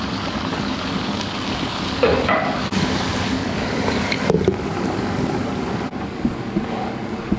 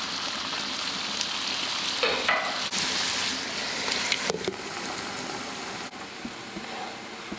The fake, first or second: first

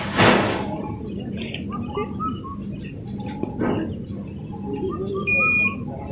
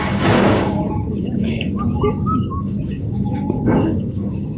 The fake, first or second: second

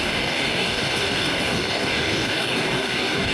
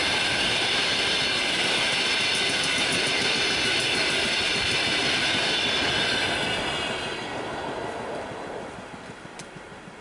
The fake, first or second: first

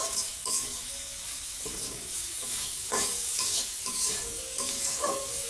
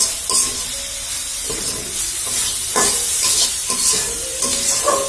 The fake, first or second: first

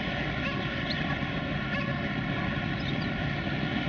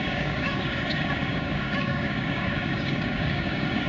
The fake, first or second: second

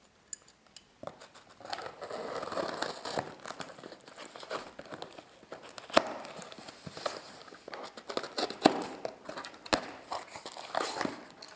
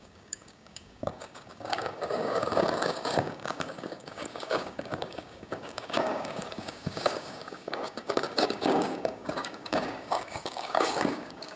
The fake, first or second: second